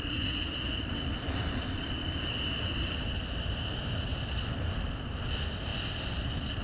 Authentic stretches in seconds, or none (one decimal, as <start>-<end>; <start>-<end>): 0.0-4.1; 5.1-6.6